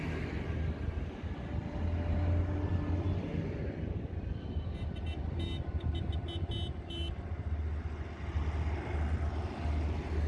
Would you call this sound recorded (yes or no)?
yes